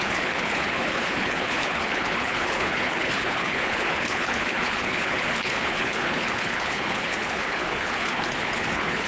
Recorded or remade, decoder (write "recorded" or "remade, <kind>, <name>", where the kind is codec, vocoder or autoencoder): remade, codec, HILCodec